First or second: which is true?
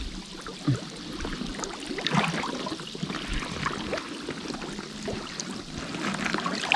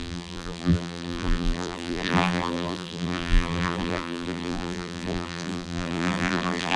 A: first